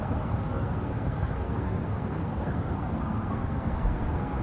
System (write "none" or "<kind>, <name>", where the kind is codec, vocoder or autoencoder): codec, SNAC